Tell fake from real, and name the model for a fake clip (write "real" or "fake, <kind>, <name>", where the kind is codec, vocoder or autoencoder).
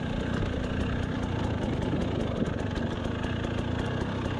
real